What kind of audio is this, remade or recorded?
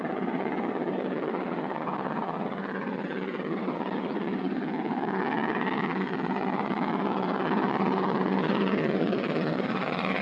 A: remade